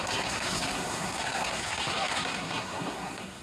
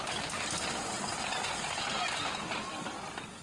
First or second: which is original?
second